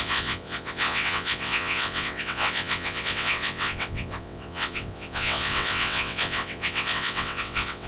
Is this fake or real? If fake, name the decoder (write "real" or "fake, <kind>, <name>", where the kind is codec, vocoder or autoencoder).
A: fake, vocoder, WaveNeXt